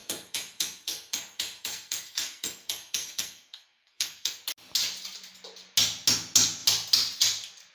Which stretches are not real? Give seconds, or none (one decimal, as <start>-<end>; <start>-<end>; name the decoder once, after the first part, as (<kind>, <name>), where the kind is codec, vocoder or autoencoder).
0.0-4.4 (codec, SNAC)

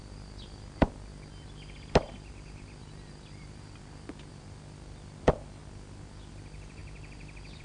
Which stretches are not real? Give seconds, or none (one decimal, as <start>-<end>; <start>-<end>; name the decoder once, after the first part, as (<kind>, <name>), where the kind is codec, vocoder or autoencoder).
none

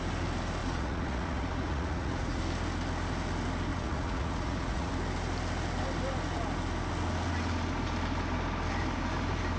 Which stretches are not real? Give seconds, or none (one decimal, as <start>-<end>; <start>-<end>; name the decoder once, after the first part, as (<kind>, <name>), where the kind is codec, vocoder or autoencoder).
0.6-2.4 (vocoder, Vocos); 3.7-4.9

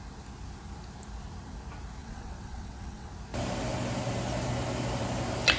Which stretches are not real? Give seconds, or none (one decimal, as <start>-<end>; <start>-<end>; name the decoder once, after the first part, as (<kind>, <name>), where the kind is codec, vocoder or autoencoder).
2.0-3.1 (vocoder, WaveNeXt)

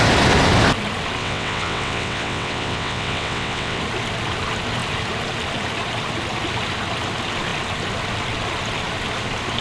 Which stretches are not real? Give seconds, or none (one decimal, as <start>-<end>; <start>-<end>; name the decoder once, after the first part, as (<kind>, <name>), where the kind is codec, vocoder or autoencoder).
1.2-3.8 (vocoder, WaveNeXt)